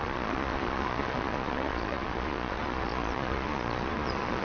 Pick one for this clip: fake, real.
fake